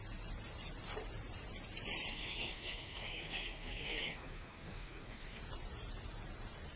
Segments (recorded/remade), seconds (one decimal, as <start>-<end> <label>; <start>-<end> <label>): 0.0-2.1 recorded; 2.1-5.4 remade; 5.4-6.8 recorded